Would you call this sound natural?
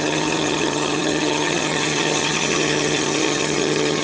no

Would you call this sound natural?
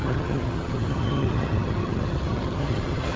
no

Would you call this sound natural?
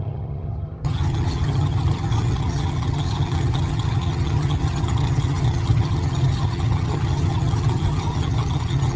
no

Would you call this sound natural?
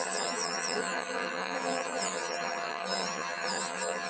no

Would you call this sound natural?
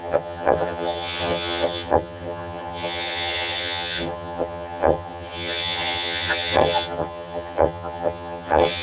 no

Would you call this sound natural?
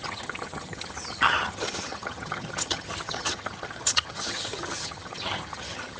no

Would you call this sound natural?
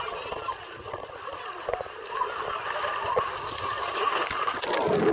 yes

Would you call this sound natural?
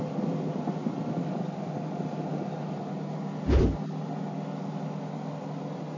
yes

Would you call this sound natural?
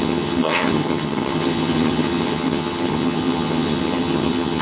no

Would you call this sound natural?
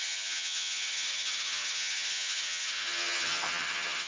no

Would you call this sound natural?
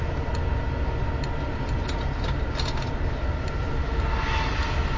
yes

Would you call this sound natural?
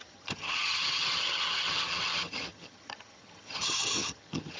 no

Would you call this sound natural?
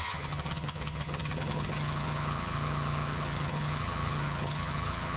no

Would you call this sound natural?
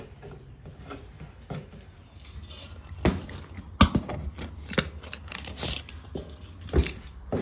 yes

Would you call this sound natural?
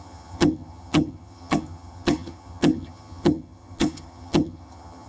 no